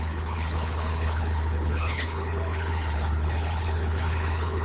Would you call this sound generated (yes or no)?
yes